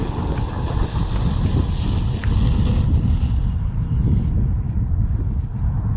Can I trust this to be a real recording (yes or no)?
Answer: yes